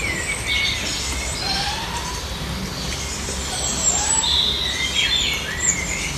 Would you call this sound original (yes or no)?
yes